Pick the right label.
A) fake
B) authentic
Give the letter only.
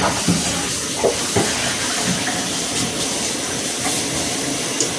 B